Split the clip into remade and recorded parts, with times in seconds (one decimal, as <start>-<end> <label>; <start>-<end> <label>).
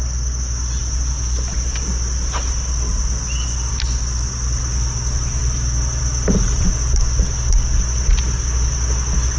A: 0.0-9.4 recorded